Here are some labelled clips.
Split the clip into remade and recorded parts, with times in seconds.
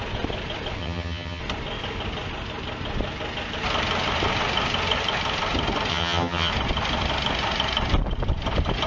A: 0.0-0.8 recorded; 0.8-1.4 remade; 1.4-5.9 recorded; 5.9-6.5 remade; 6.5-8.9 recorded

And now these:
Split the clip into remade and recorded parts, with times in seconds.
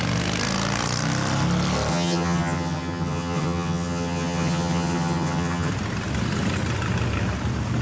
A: 0.0-1.9 recorded; 1.9-5.7 remade; 5.7-7.8 recorded